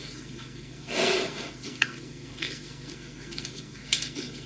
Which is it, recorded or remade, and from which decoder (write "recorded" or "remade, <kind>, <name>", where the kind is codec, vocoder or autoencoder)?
remade, codec, SNAC